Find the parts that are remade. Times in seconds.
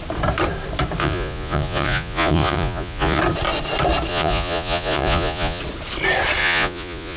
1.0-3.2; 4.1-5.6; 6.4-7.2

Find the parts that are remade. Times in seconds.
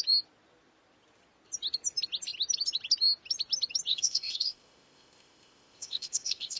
3.9-6.6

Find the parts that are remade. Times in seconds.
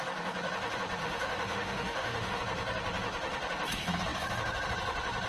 1.0-2.4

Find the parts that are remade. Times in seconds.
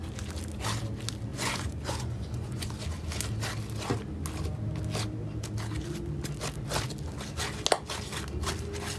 1.3-2.7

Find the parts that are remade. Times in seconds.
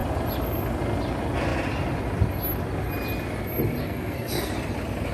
3.8-4.5